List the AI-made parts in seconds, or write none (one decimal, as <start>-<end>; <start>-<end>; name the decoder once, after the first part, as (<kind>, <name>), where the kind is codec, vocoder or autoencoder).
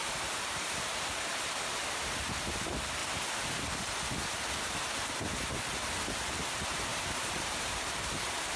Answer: 0.0-1.7 (vocoder, BigVGAN v2); 6.9-8.6